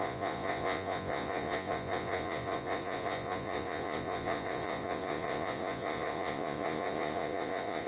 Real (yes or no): no